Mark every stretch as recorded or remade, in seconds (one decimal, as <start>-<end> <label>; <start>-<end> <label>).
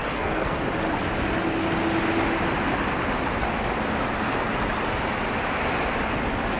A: 0.0-0.6 remade; 0.6-6.6 recorded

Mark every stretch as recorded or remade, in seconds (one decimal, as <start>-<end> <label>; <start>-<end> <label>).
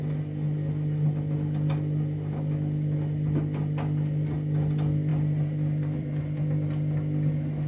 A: 0.0-5.1 recorded; 5.1-6.2 remade; 6.2-7.7 recorded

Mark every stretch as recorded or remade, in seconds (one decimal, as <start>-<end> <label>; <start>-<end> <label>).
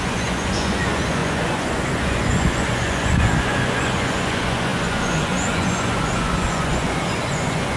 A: 0.0-7.8 remade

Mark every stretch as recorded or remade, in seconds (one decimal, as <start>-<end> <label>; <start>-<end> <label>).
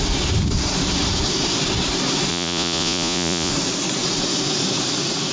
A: 0.0-2.3 recorded; 2.3-3.5 remade; 3.5-5.3 recorded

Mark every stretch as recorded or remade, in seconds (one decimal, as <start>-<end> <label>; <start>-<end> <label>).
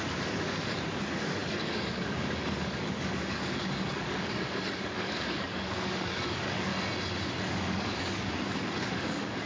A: 0.0-6.7 remade; 6.7-7.5 recorded; 7.5-9.5 remade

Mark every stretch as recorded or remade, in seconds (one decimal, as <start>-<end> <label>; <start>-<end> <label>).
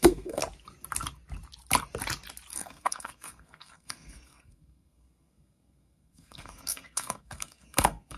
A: 0.0-0.4 remade; 0.4-2.5 recorded; 2.5-8.2 remade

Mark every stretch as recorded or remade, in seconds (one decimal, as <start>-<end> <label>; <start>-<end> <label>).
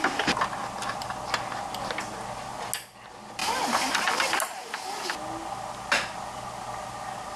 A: 0.0-7.4 recorded